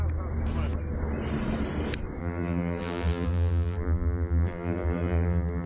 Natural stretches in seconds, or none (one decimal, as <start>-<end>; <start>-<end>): 0.0-2.2